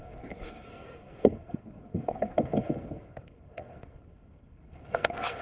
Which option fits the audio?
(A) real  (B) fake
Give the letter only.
B